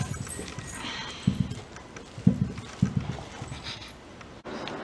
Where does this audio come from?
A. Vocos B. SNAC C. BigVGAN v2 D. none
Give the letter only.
D